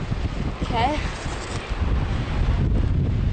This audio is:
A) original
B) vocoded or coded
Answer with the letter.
A